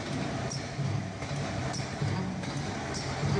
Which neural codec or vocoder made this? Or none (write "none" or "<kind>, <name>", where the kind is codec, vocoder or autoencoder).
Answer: none